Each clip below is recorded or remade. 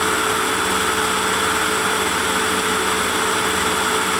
recorded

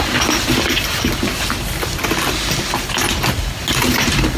recorded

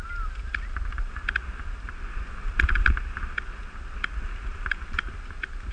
recorded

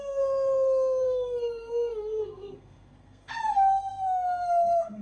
remade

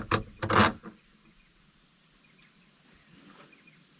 recorded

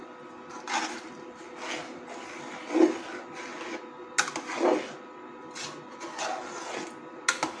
recorded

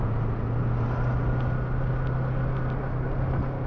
recorded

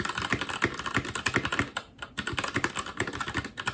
recorded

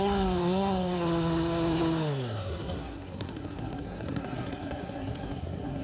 remade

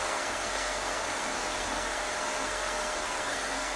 remade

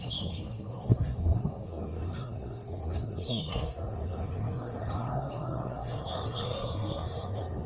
remade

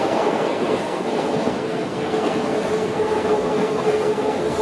remade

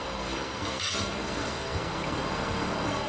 remade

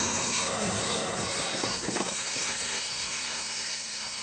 remade